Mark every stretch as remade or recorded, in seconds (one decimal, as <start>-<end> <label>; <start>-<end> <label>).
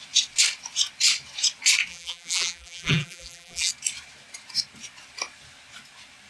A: 0.0-1.9 recorded; 1.9-3.7 remade; 3.7-6.3 recorded